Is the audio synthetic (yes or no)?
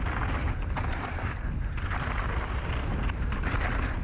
no